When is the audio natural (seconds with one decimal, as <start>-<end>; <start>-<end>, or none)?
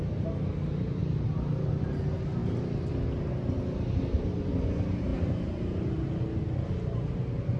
0.0-7.6